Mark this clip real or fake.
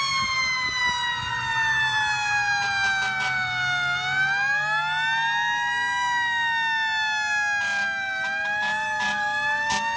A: real